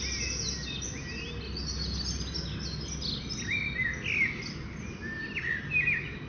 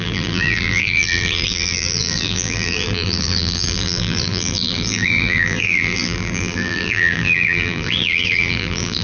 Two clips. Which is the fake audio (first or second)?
second